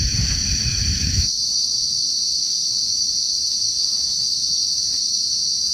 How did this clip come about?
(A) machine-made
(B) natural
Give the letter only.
A